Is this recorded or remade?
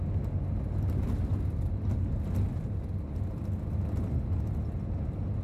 recorded